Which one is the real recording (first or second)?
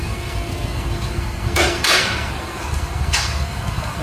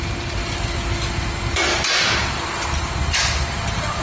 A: second